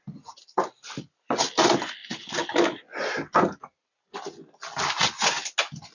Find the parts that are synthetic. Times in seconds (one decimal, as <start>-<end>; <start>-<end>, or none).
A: none